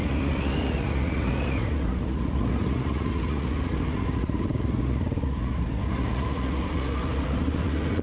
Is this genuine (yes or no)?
no